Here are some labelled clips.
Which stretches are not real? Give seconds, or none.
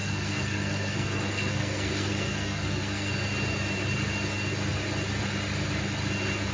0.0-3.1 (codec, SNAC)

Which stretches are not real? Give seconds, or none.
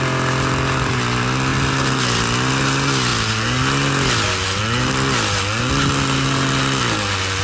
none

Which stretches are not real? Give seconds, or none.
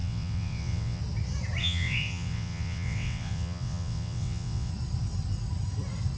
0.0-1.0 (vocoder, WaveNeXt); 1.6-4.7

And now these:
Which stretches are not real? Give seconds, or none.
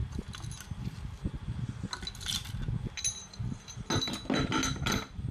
none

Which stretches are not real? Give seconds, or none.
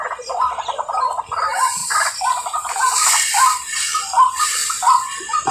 none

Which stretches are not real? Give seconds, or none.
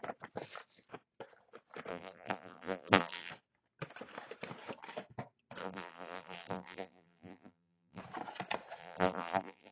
1.9-3.3 (vocoder, BigVGAN v2); 5.6-8.0; 8.8-9.7